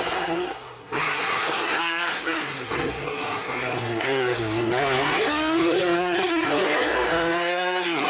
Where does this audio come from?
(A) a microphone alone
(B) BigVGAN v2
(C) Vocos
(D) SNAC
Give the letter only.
D